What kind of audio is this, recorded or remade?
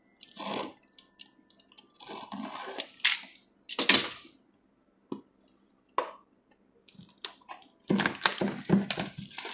recorded